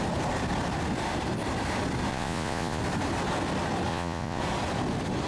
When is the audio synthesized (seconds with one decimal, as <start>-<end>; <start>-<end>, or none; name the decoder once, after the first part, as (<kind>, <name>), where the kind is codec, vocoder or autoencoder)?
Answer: 2.1-2.8 (vocoder, Vocos); 3.9-4.4